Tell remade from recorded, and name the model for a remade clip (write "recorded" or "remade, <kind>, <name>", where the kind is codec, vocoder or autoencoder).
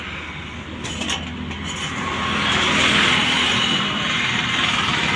recorded